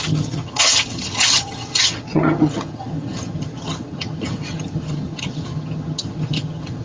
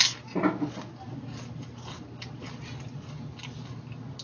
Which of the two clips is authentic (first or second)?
second